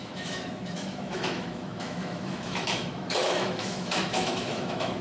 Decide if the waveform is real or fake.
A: fake